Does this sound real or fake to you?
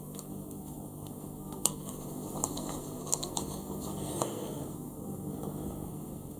fake